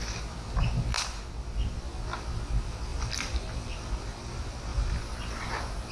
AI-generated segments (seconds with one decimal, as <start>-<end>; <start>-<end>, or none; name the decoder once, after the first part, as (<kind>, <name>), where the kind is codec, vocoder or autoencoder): 2.9-4.3 (vocoder, BigVGAN v2); 4.7-5.5